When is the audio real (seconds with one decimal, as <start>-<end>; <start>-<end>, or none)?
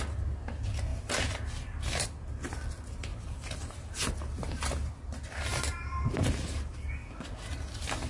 0.0-8.1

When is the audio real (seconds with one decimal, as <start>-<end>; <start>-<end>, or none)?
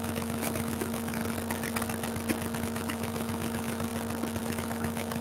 1.2-2.6; 3.9-4.4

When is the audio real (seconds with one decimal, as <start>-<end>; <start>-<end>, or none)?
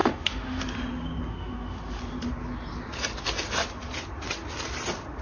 0.6-1.3; 2.0-5.2